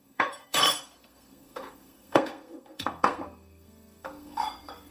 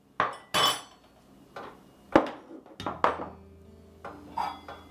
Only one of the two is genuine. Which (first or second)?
second